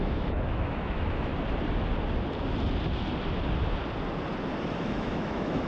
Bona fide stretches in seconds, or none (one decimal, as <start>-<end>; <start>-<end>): 1.3-4.7